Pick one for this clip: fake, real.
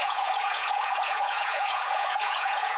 fake